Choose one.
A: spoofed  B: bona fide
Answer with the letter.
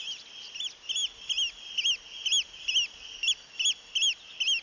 B